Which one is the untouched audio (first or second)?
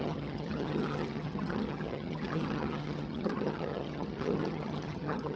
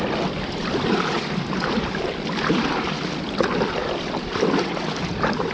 second